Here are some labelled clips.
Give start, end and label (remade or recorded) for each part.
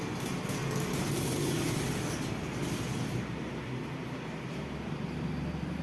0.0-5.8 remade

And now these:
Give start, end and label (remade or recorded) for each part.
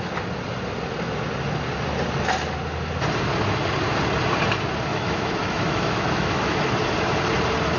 0.0-4.9 recorded; 4.9-6.6 remade; 6.6-7.8 recorded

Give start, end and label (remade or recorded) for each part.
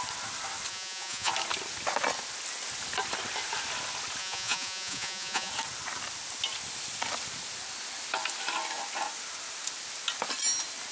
0.0-0.7 recorded; 0.7-1.3 remade; 1.3-4.2 recorded; 4.2-5.5 remade; 5.5-10.9 recorded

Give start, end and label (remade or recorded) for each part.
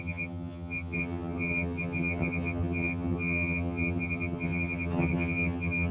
0.0-5.9 remade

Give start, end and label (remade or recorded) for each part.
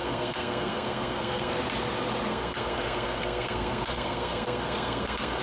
0.0-1.5 remade; 1.5-2.3 recorded; 2.3-5.4 remade